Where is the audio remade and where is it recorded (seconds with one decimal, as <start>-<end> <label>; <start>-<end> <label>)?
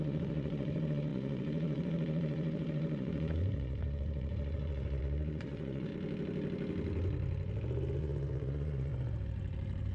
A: 0.0-5.9 remade; 5.9-8.0 recorded; 8.0-8.9 remade; 8.9-9.9 recorded